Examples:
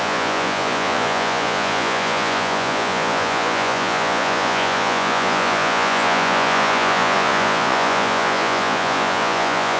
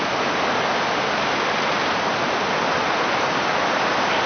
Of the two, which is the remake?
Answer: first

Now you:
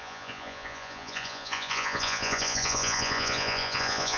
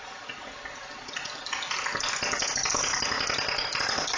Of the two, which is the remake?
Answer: first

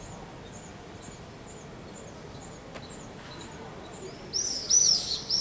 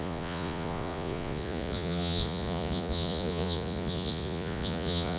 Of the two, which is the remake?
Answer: second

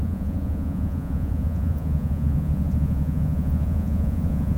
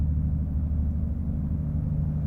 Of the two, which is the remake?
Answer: first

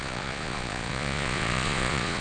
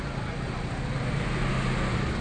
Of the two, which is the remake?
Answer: first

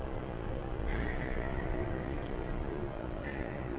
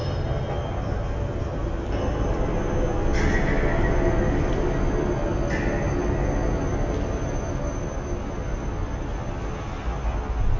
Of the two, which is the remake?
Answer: first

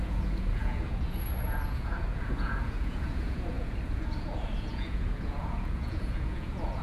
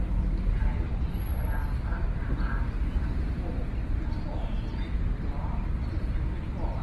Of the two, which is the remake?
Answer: first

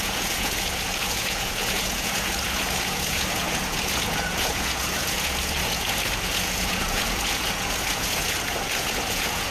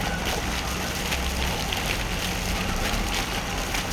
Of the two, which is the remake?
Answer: first